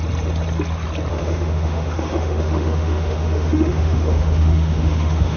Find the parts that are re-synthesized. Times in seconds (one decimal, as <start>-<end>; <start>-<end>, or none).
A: 1.1-5.4